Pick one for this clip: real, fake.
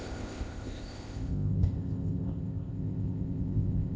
fake